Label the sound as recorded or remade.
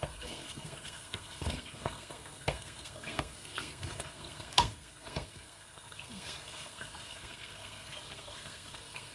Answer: remade